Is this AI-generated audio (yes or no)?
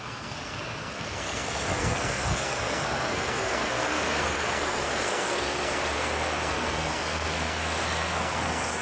yes